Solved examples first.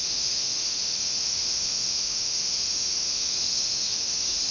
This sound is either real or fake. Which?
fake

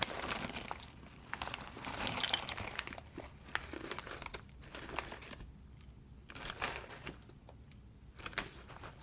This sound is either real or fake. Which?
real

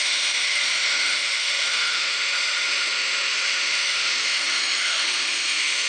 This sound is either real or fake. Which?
fake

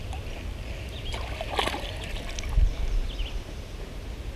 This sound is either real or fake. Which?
real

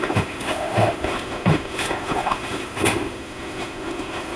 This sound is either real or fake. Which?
fake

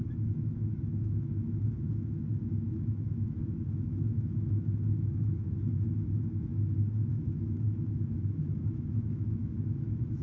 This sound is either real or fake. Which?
fake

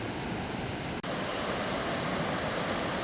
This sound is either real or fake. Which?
real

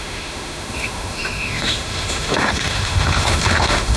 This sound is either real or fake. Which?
fake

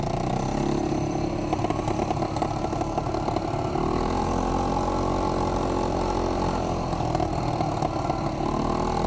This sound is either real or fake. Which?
real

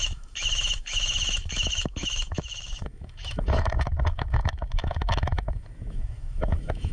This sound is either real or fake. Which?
fake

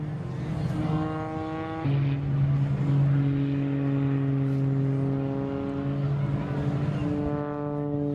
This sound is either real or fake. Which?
real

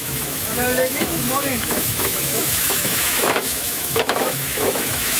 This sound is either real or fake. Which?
fake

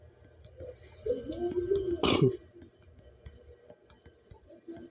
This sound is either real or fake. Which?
real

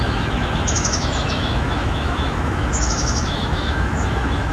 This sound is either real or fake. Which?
fake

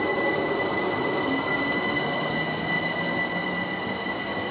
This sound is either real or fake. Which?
real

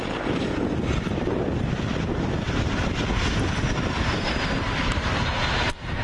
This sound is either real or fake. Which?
real